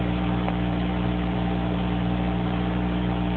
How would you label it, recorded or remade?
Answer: remade